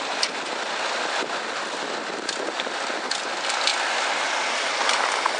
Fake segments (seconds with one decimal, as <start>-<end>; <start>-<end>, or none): none

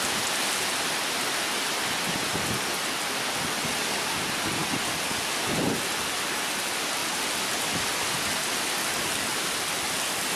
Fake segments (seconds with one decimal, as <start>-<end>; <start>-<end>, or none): none

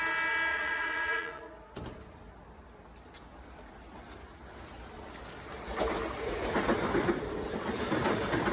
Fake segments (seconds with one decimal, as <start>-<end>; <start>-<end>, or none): 0.5-1.4

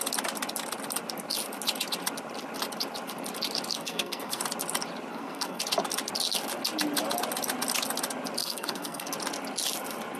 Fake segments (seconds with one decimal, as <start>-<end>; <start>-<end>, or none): 3.7-4.4; 5.1-5.6; 8.4-9.1

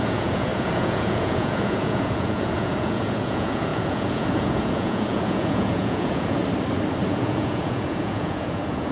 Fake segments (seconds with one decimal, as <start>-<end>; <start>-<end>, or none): 0.0-6.4; 7.1-8.9

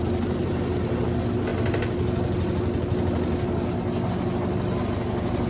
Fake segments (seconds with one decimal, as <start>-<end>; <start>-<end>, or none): none

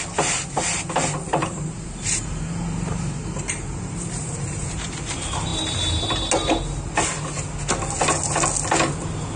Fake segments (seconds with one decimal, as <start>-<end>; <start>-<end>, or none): 1.4-4.9

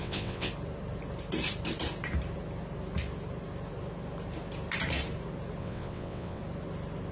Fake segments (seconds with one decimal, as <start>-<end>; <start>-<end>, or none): 0.0-0.5; 5.6-6.4